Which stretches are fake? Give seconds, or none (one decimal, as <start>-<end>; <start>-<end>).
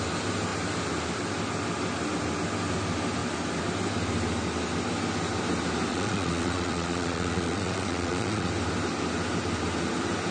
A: 5.9-8.5